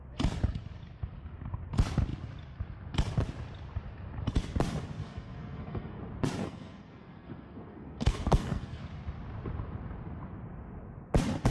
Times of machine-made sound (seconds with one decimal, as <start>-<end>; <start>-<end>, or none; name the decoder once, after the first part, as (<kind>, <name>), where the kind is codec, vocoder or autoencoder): 5.0-6.0 (codec, SNAC); 6.4-8.8